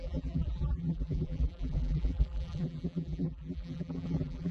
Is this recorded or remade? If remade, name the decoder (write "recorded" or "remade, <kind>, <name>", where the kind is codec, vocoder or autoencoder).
remade, vocoder, BigVGAN v2